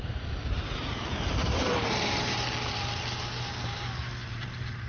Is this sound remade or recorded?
remade